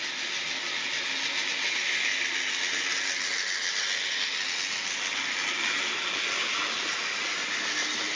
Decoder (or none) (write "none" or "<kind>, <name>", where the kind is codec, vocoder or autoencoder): none